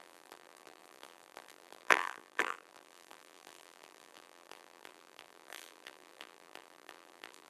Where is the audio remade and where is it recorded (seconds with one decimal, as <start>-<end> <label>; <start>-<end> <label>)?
0.0-7.5 remade